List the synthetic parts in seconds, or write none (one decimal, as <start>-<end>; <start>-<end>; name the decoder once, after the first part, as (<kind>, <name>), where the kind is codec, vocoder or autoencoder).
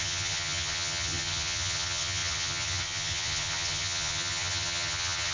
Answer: 0.0-5.3 (vocoder, HiFi-GAN)